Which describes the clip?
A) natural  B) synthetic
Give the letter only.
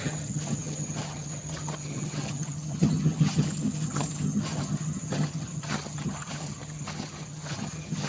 B